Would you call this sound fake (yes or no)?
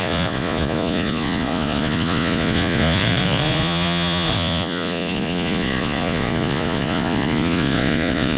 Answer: yes